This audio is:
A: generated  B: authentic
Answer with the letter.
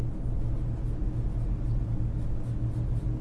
B